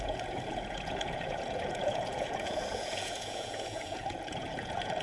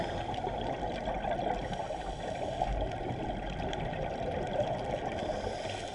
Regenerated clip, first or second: first